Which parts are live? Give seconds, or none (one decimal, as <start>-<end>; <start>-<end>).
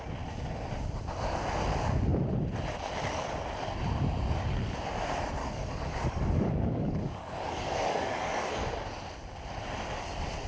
0.0-5.4; 8.5-10.5